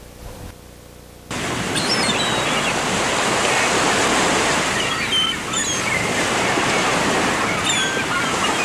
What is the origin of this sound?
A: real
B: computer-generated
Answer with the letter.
A